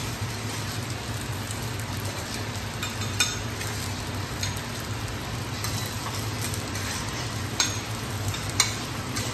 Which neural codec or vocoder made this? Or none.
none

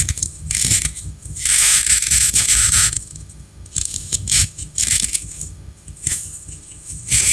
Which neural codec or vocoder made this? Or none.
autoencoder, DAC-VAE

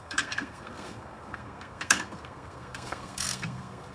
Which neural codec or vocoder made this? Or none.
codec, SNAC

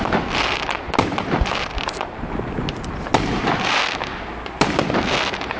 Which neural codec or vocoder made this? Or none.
none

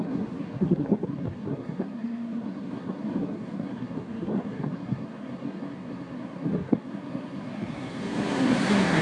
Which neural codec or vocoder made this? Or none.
codec, SNAC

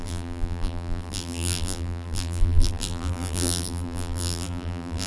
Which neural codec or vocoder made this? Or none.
vocoder, BigVGAN v2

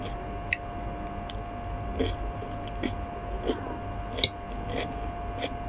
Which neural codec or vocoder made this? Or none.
none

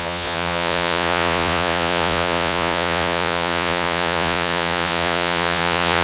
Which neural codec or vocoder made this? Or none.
vocoder, Vocos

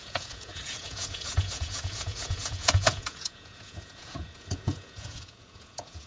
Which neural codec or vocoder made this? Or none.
vocoder, Vocos